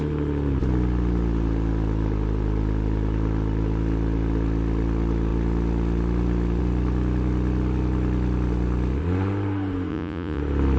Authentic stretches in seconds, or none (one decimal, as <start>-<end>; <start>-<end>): 0.0-9.9; 10.4-10.8